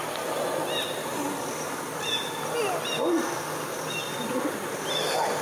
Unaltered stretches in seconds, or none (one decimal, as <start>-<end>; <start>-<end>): 0.0-5.4

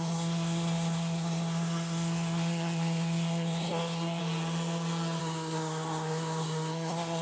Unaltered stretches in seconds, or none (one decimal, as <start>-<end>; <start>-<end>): 4.2-5.2

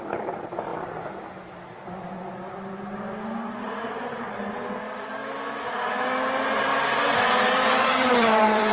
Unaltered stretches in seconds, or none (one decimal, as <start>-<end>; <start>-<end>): 0.7-3.6; 5.2-5.7; 6.7-7.2

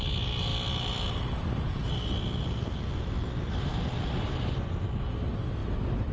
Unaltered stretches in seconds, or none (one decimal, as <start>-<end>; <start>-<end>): 0.0-5.6

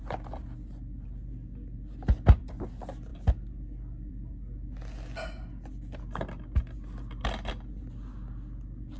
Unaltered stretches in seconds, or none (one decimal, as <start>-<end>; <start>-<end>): 0.0-9.0

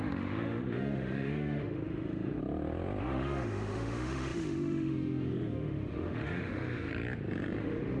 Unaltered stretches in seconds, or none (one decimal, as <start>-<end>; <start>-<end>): 2.4-3.0; 6.9-7.6